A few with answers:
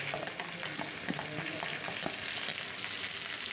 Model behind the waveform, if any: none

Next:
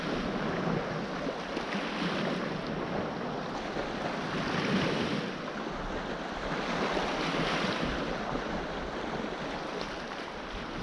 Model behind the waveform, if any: none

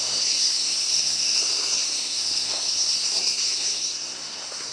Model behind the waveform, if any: codec, SNAC